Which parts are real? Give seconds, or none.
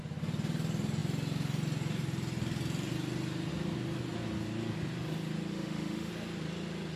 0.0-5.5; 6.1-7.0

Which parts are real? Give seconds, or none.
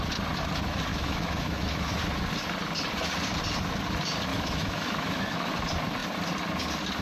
0.0-0.9; 2.0-4.3; 5.5-7.0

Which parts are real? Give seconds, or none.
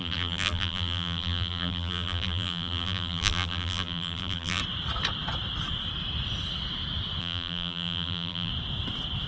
4.6-7.2; 8.5-9.3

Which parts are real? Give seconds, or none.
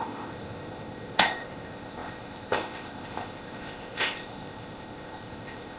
none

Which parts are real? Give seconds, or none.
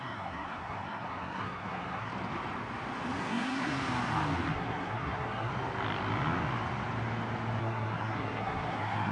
2.1-3.2; 3.7-4.5; 5.5-7.6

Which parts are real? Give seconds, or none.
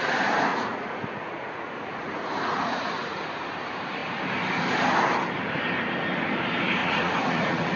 0.0-0.5; 3.2-6.8